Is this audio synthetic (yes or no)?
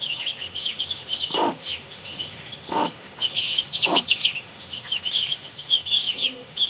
yes